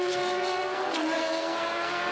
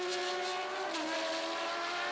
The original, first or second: second